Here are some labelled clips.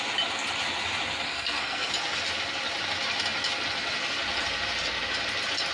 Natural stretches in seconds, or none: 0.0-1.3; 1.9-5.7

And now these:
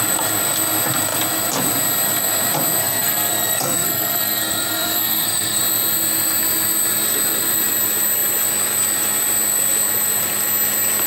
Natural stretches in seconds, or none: 0.0-2.8; 5.6-11.1

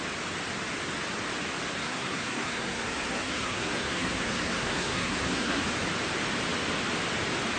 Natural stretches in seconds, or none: 0.0-1.8; 5.6-7.6